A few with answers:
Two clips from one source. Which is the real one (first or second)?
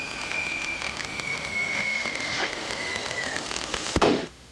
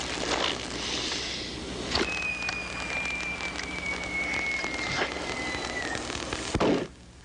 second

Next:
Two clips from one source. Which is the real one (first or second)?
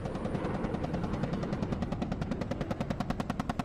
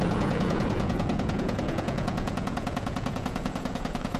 first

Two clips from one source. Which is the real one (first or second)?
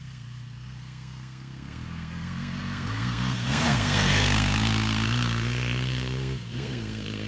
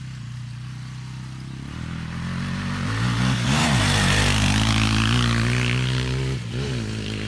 second